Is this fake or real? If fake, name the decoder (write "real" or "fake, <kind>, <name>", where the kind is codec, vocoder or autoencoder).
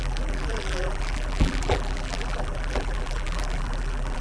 fake, vocoder, BigVGAN v2